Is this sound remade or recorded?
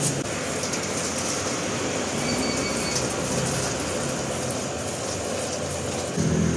recorded